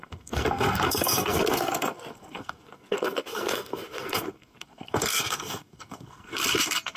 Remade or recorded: remade